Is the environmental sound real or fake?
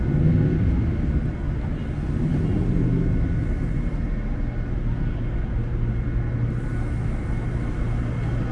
real